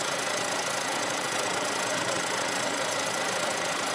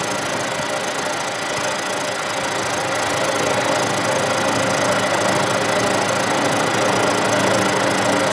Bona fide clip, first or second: second